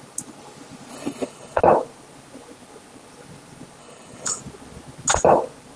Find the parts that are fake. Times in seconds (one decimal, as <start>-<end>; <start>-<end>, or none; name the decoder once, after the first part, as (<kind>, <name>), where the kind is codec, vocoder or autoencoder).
0.9-1.6 (codec, HILCodec); 3.8-4.4